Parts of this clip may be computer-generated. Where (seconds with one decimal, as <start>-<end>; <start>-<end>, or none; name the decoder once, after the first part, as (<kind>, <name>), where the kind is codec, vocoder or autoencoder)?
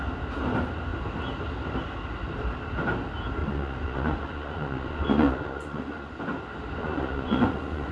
3.4-6.2 (vocoder, Vocos); 6.8-7.9